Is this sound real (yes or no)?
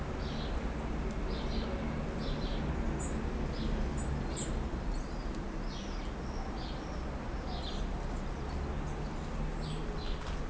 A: yes